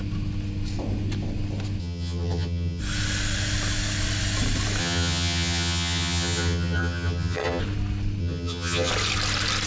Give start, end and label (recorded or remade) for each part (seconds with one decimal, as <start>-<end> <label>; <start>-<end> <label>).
0.0-1.8 recorded; 1.8-2.8 remade; 2.8-4.8 recorded; 4.8-7.6 remade; 7.6-8.2 recorded; 8.2-8.9 remade; 8.9-9.7 recorded